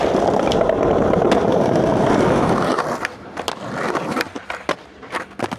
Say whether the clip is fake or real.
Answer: real